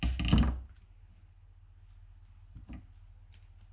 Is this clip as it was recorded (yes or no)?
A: yes